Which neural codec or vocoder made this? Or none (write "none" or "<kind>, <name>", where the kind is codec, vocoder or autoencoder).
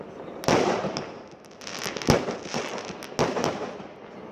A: none